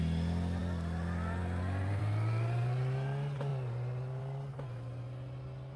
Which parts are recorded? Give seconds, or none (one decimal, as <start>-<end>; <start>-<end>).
0.0-5.8